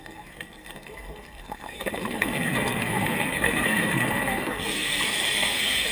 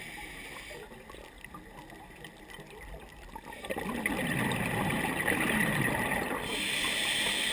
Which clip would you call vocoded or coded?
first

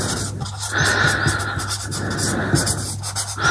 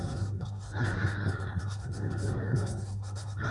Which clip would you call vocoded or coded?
second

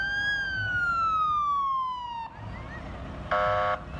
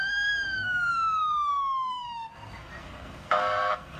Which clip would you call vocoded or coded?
second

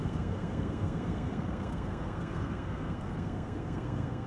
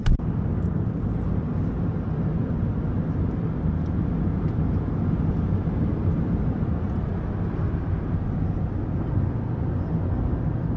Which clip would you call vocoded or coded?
first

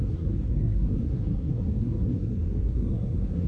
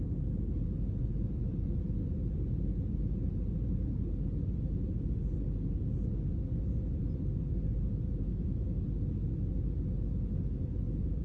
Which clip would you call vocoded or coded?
first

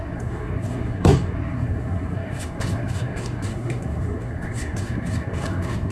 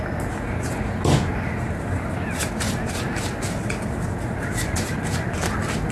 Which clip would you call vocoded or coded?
first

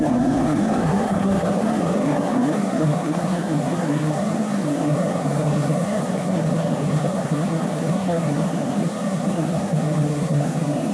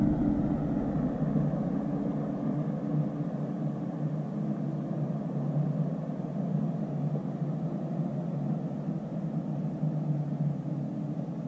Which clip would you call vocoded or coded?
first